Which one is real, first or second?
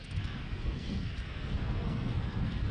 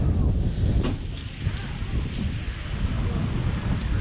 second